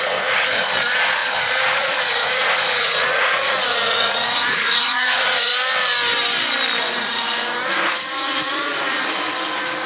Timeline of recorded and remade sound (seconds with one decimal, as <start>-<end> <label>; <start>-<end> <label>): 0.0-5.5 remade; 5.5-6.8 recorded; 6.8-9.9 remade